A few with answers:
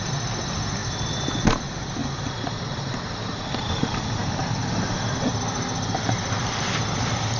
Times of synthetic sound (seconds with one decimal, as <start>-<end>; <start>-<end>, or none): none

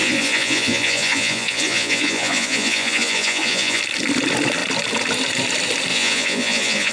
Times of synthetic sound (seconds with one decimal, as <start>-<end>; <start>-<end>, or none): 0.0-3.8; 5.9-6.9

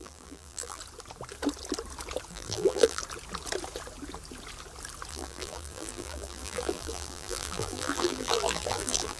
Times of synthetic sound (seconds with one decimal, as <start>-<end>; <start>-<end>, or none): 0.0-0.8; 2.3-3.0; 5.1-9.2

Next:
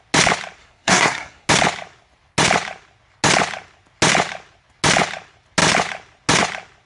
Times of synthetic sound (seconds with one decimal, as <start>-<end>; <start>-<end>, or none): 0.6-1.5

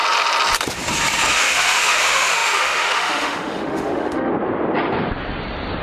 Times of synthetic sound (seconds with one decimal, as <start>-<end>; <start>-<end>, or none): 1.3-4.3

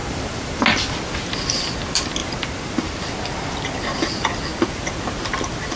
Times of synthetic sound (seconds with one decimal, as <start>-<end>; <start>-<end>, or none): 0.0-0.6; 2.2-3.0

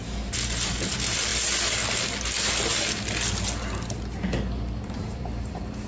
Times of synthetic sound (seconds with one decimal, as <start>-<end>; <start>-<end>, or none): 0.0-1.3; 4.8-5.9